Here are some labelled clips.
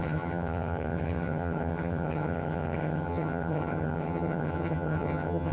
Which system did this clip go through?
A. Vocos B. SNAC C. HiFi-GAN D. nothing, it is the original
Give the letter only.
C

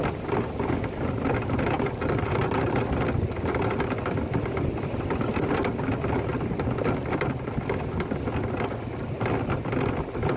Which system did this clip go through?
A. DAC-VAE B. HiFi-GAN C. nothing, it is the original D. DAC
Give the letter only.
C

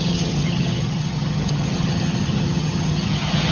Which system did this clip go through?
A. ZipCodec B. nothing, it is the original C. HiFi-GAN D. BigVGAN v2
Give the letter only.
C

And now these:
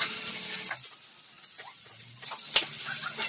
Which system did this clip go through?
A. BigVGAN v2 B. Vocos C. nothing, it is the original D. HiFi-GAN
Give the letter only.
C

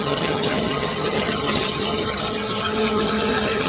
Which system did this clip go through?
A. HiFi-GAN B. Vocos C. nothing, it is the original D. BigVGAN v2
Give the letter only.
A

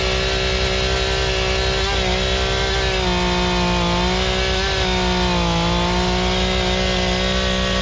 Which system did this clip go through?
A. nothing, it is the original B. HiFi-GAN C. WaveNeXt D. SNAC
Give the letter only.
A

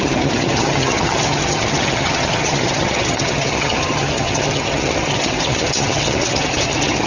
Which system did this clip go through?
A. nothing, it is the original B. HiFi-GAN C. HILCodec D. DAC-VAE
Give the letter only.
B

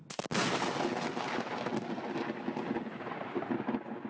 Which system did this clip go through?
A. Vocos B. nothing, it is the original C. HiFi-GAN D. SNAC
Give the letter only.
B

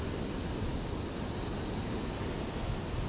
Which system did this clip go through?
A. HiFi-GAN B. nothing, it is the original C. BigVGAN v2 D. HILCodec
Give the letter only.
B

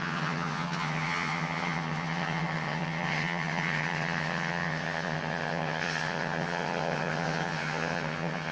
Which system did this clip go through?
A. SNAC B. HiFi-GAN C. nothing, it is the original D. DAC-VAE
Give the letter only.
B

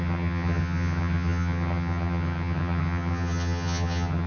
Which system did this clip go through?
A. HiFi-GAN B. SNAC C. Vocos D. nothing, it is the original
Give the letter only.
A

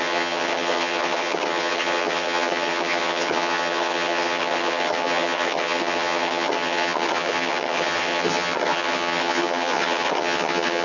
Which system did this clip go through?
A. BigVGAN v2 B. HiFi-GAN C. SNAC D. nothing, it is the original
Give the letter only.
B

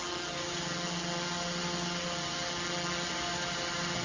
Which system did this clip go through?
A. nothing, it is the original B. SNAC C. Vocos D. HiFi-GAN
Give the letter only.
A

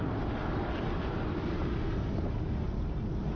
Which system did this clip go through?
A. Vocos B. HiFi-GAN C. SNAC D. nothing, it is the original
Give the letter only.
D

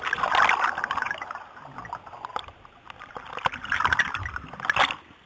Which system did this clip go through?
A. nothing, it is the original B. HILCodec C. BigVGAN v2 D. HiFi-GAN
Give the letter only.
A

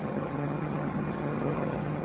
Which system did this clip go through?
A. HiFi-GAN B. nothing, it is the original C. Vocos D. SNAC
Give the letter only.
A